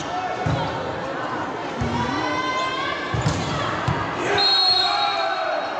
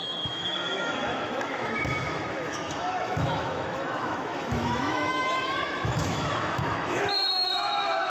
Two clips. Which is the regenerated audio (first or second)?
second